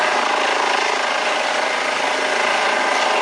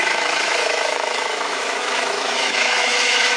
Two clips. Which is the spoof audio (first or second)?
second